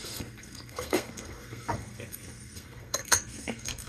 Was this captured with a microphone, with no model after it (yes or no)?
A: no